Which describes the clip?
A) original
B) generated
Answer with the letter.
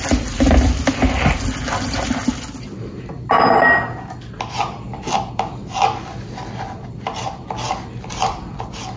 A